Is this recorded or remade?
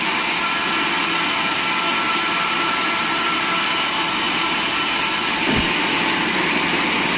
recorded